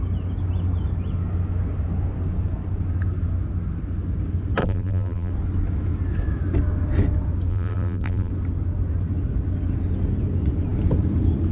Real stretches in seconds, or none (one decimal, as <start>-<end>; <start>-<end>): 0.0-4.6; 5.3-7.5; 8.3-11.5